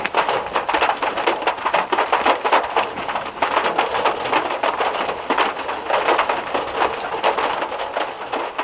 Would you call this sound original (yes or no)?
yes